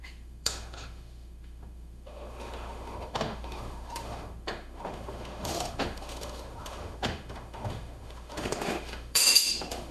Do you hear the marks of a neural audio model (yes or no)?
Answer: yes